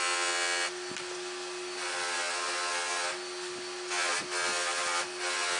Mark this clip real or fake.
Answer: real